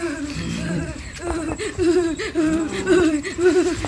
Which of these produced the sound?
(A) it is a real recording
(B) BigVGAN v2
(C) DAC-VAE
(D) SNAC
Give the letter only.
B